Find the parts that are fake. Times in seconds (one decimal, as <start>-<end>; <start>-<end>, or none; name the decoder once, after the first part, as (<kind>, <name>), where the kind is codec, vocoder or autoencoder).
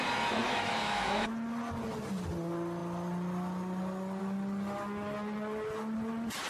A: 0.4-1.3 (autoencoder, DAC-VAE)